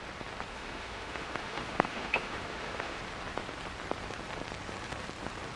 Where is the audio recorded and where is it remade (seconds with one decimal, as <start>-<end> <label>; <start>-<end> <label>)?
0.0-0.5 recorded; 0.5-3.0 remade; 3.0-5.6 recorded